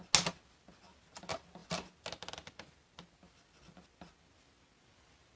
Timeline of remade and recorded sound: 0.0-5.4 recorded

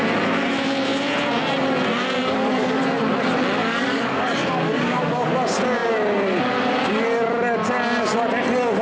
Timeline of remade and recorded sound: 0.0-2.2 recorded; 2.2-2.8 remade; 2.8-3.6 recorded; 3.6-5.3 remade; 5.3-8.8 recorded

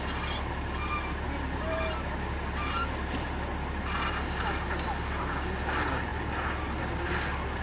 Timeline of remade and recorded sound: 0.0-7.6 recorded